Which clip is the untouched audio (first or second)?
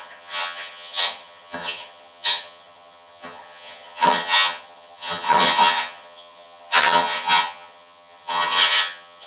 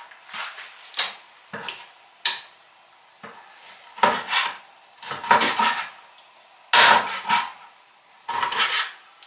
second